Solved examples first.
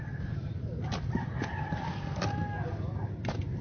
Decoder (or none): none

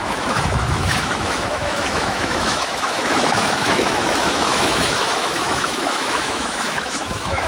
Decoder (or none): autoencoder, DAC-VAE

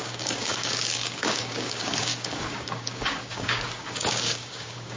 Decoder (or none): codec, DAC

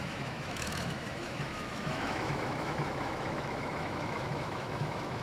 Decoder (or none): autoencoder, DAC-VAE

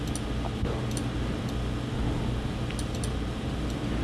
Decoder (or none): none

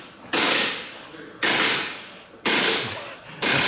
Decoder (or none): none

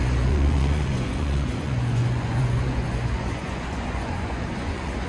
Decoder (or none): vocoder, Vocos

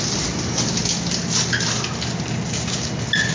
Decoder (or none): none